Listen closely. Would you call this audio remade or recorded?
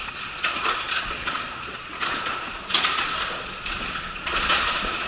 remade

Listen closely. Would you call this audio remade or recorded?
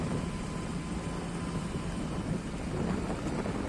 recorded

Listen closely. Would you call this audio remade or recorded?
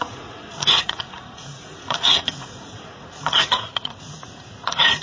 remade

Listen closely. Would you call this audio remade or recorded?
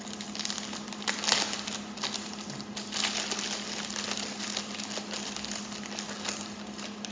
recorded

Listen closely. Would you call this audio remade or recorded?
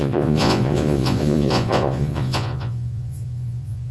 remade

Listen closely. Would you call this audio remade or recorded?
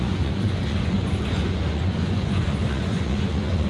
remade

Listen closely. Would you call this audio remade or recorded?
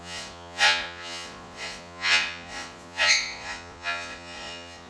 remade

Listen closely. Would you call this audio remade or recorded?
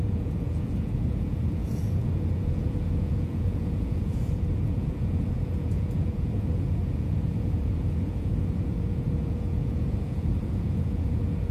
remade